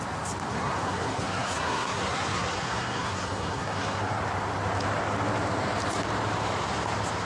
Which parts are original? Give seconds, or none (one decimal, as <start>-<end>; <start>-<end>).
0.0-0.5; 4.2-7.3